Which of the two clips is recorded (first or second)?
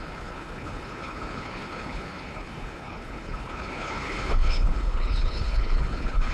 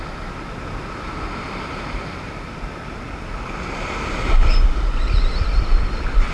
second